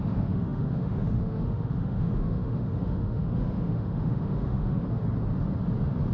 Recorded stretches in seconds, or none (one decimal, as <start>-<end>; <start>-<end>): 5.0-6.1